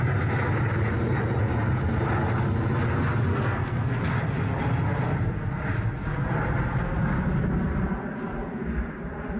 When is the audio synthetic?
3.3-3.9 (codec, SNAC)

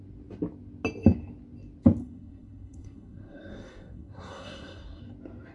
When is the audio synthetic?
2.0-5.0 (codec, SNAC)

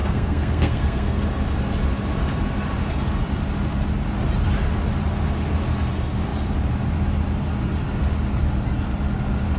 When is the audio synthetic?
0.0-1.2 (codec, SNAC)

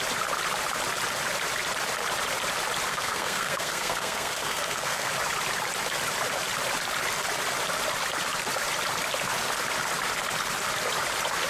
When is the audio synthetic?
2.9-5.1 (codec, SNAC)

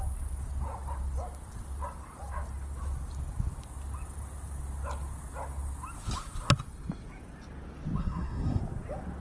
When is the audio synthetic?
8.0-8.6 (codec, SNAC)

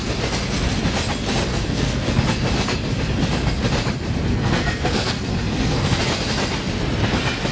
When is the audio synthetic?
1.5-2.2 (codec, SNAC); 4.3-6.0

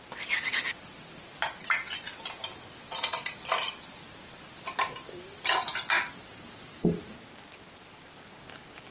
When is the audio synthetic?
none